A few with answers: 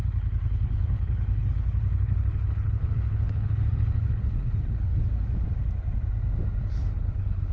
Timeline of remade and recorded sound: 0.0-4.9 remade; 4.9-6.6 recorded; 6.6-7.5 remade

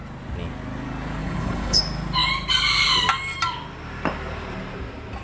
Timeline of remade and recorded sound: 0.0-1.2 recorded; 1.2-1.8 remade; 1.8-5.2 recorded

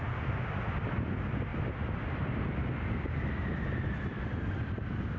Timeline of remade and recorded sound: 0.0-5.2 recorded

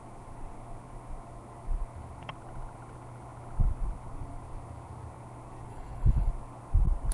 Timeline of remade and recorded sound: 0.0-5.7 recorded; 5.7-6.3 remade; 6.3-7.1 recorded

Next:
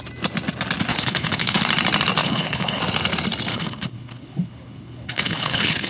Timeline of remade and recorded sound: 0.0-0.9 recorded; 0.9-1.6 remade; 1.6-2.2 recorded; 2.2-2.8 remade; 2.8-3.5 recorded; 3.5-5.9 remade

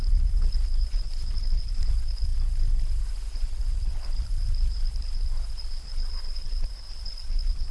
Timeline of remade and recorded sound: 0.0-7.7 remade